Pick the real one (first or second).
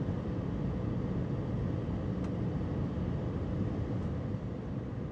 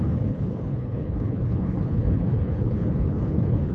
first